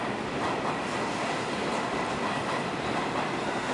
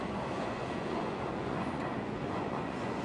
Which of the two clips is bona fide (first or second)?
first